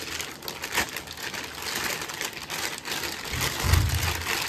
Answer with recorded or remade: recorded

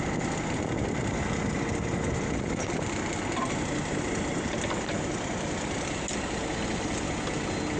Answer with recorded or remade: recorded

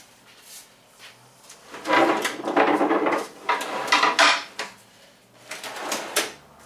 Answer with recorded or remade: recorded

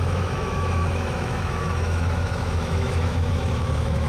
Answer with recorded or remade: remade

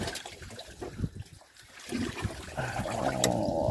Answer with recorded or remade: recorded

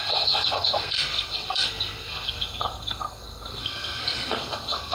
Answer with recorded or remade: remade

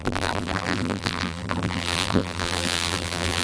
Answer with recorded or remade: remade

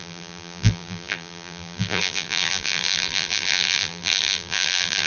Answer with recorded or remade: remade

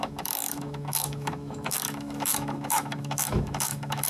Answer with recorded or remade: remade